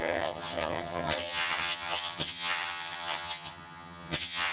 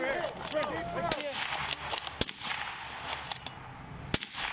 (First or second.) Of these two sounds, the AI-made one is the first